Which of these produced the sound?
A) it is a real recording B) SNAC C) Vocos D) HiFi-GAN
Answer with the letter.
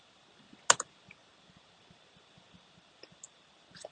A